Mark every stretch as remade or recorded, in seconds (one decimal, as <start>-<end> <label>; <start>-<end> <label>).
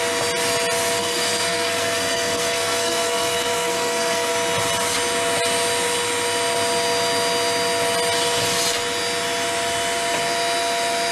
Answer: 0.0-1.0 recorded; 1.0-4.3 remade; 4.3-11.1 recorded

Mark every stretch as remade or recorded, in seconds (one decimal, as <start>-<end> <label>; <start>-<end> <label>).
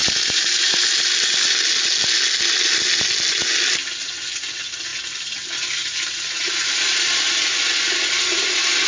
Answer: 0.0-1.0 remade; 1.0-8.9 recorded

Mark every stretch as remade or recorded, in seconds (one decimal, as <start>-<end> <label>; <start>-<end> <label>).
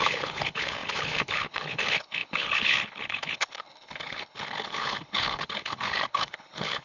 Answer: 0.0-6.8 remade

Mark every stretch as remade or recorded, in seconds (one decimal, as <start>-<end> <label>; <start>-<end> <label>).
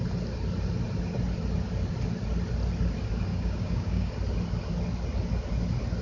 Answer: 0.0-3.3 recorded; 3.3-4.1 remade; 4.1-6.0 recorded